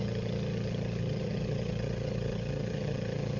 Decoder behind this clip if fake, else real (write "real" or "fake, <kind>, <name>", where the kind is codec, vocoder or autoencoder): fake, vocoder, HiFi-GAN